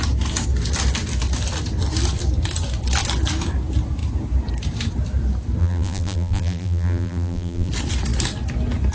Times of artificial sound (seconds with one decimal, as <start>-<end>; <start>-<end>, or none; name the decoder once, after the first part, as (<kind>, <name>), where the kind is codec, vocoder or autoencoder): 5.6-7.7 (vocoder, BigVGAN v2)